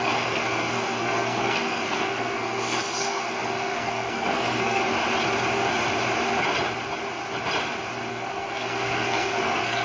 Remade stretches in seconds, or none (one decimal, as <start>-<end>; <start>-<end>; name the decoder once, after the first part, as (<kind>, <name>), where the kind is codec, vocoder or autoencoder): 0.0-4.8 (codec, SNAC); 8.1-9.8